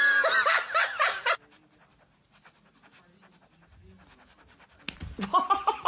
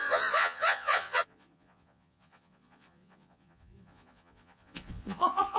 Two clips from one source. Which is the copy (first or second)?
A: second